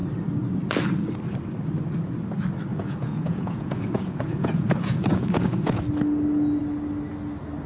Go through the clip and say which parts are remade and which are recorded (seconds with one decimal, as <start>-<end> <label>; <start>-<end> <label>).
0.0-2.7 recorded; 2.7-5.8 remade; 5.8-7.7 recorded

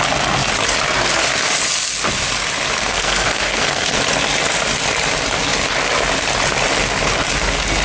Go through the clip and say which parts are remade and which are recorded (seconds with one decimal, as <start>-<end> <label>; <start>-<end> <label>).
0.0-2.8 recorded; 2.8-4.0 remade; 4.0-7.8 recorded